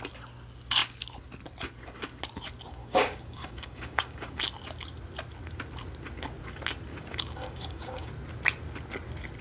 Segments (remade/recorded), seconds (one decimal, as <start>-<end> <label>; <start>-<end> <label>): 0.0-2.8 recorded; 2.8-4.4 remade; 4.4-6.9 recorded; 6.9-8.1 remade; 8.1-9.4 recorded